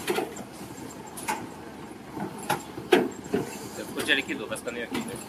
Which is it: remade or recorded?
recorded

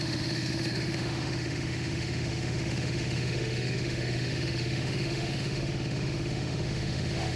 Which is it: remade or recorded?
remade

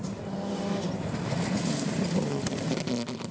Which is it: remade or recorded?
recorded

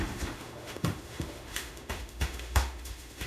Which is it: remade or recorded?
remade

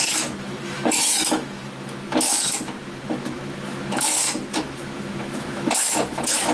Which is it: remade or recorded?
remade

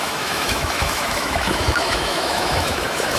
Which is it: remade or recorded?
remade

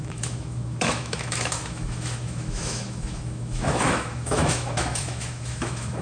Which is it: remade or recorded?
remade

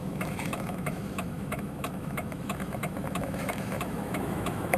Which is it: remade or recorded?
remade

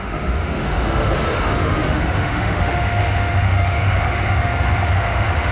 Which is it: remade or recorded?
remade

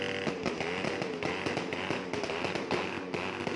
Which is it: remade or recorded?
recorded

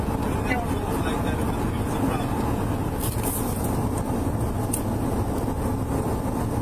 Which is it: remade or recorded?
recorded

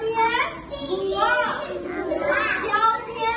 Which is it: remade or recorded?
recorded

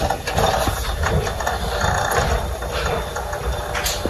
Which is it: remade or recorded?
recorded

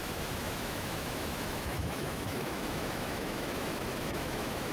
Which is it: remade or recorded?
remade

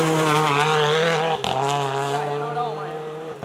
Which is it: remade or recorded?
recorded